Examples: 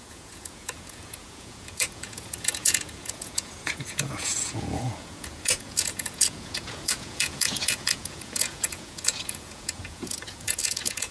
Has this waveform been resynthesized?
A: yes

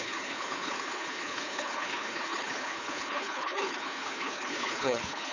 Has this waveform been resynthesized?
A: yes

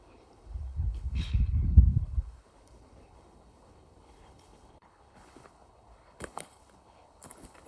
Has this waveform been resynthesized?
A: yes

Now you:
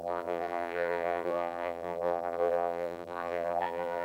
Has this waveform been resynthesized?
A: yes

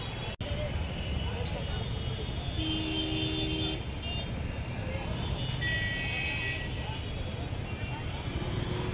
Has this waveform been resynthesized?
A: no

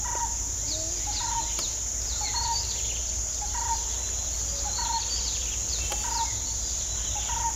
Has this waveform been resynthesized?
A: no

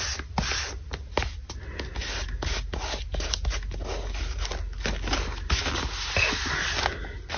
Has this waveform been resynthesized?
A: no